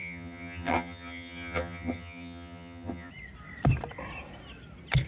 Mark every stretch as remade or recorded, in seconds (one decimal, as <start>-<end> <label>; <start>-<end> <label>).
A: 0.0-3.1 remade; 3.1-5.1 recorded